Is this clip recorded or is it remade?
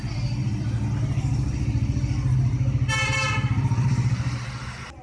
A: recorded